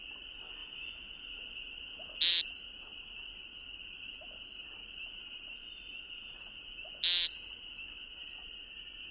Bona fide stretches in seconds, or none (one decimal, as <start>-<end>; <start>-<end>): 0.0-8.2